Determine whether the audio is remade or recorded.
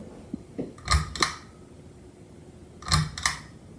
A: recorded